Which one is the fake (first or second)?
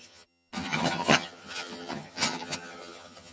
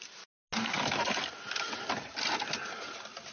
first